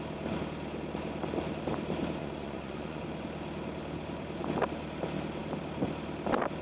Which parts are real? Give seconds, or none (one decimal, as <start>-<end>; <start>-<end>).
0.0-2.2; 3.0-6.6